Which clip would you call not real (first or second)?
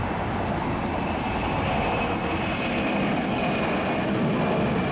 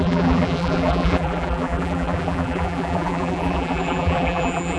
second